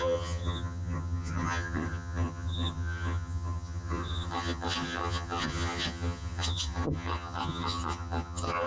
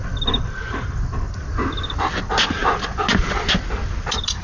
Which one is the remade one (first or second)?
first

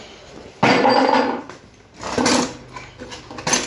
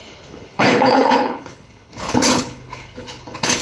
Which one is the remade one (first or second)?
second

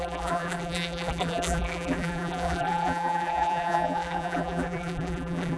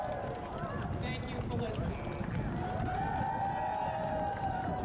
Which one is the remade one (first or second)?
first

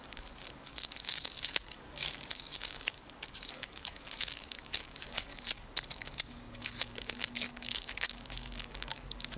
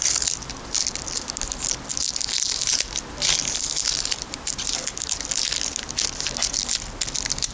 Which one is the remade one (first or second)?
first